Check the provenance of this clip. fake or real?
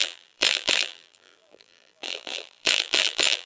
fake